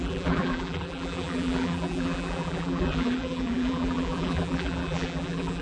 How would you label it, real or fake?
fake